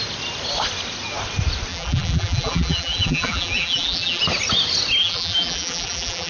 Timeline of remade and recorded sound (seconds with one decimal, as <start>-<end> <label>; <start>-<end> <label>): 0.0-1.7 recorded; 1.7-4.2 remade; 4.2-5.0 recorded; 5.0-6.3 remade